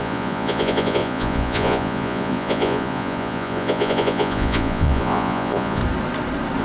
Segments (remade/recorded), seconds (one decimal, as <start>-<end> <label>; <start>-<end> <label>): 0.0-5.8 remade; 5.8-6.6 recorded